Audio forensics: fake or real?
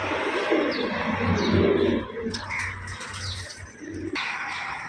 real